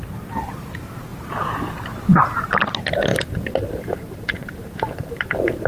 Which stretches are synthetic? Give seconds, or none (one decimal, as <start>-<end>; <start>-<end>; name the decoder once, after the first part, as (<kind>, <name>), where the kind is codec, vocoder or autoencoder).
3.1-5.7 (vocoder, BigVGAN v2)